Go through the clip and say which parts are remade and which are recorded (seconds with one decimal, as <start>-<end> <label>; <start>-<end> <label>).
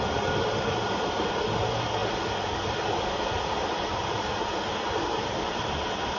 0.0-6.2 recorded